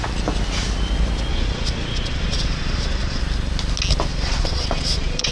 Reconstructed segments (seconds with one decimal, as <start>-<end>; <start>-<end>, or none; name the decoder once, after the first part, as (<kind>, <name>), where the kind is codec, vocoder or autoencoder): 1.3-3.2 (vocoder, Vocos); 4.1-5.3